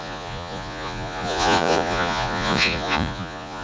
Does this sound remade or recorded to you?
remade